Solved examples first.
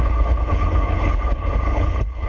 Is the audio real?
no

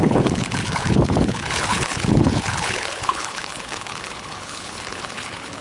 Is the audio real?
no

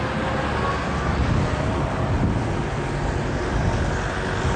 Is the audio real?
yes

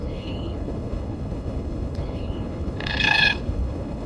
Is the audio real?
no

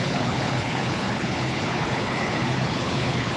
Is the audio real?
no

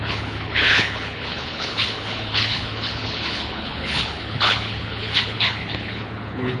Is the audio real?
no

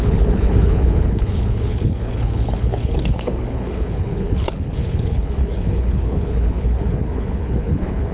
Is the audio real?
no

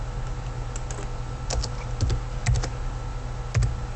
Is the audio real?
yes